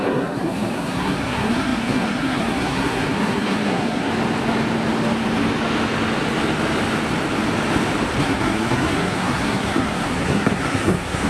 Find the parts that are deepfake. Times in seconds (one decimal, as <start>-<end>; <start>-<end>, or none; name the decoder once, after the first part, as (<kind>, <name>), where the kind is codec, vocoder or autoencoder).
0.0-4.1 (codec, SNAC); 8.2-11.3